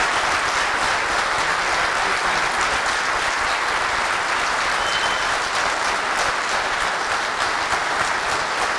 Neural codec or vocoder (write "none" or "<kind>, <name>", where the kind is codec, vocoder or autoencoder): none